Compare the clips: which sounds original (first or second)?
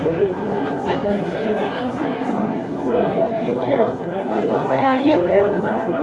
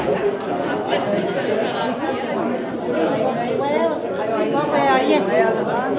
second